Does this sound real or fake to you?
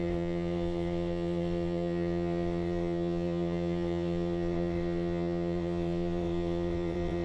fake